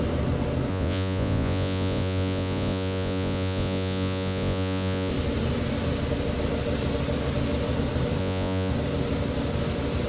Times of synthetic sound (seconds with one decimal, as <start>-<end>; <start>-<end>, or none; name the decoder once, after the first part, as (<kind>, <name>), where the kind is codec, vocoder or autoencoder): 0.7-5.1 (vocoder, Vocos); 8.2-8.7